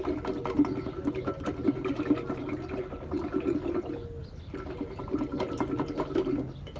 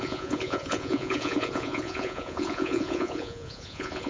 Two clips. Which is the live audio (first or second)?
first